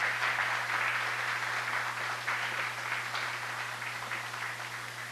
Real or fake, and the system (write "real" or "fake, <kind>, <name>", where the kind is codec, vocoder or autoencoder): real